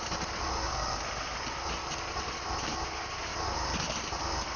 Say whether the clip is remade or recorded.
recorded